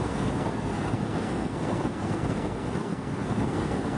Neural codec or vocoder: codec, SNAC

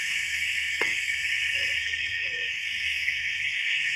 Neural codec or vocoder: codec, SNAC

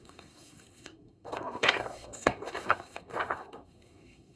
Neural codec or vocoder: codec, SNAC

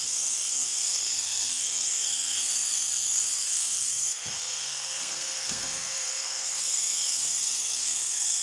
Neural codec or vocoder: codec, SNAC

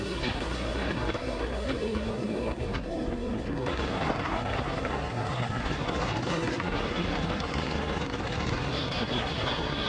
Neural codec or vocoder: codec, SNAC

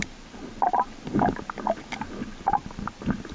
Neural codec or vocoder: none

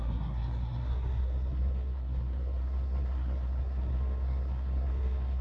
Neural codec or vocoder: codec, SNAC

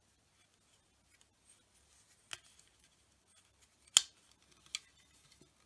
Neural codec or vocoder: none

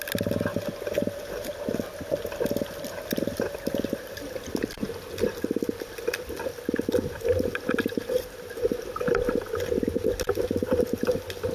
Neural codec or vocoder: none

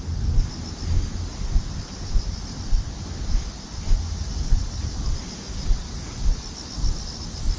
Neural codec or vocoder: none